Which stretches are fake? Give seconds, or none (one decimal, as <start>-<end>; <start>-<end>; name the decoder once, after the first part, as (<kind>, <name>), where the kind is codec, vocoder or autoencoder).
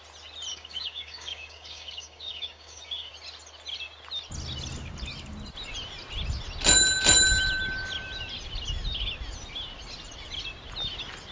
0.5-3.1 (codec, DAC)